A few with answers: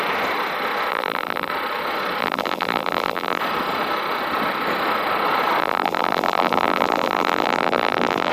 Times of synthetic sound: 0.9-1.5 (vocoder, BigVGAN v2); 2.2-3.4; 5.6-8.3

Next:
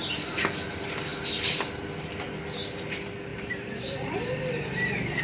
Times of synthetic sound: 3.3-5.2 (vocoder, BigVGAN v2)

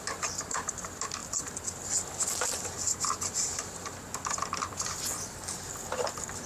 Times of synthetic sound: none

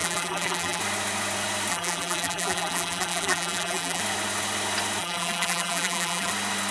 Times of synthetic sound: 0.0-0.8 (vocoder, BigVGAN v2); 1.7-4.0; 5.0-6.3

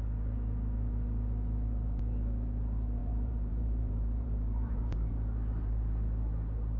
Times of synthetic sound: 3.0-5.1 (vocoder, BigVGAN v2)

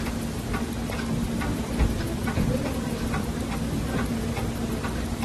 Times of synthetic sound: 1.2-3.8 (vocoder, BigVGAN v2)

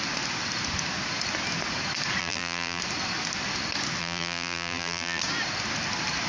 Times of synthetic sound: 2.2-2.8 (vocoder, BigVGAN v2); 4.0-5.2

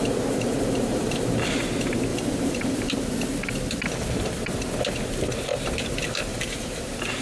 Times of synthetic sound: 0.0-1.5 (vocoder, BigVGAN v2); 2.1-2.9; 6.3-6.8